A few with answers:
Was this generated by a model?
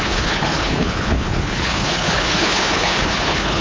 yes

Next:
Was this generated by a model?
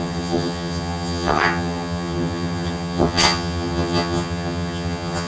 yes